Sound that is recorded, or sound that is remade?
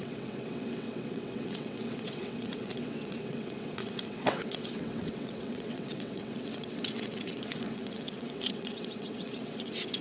remade